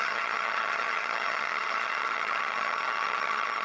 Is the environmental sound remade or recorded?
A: remade